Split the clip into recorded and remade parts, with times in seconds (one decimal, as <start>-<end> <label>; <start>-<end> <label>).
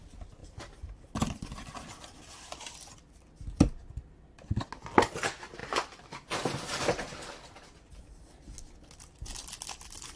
0.0-0.4 recorded; 0.4-2.2 remade; 2.2-5.6 recorded; 5.6-8.0 remade; 8.0-10.2 recorded